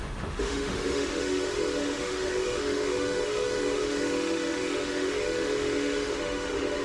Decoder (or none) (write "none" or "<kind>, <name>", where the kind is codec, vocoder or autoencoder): autoencoder, DAC-VAE